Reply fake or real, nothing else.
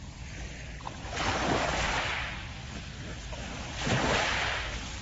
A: real